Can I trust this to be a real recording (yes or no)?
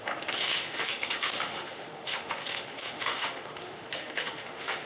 no